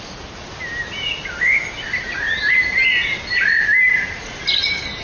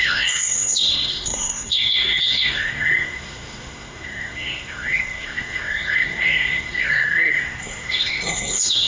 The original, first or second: first